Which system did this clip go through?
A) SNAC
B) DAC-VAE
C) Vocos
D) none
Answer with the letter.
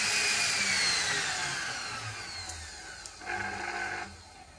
D